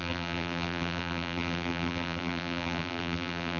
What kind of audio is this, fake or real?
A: fake